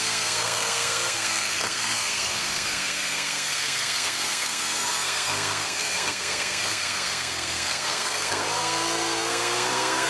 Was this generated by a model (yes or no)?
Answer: yes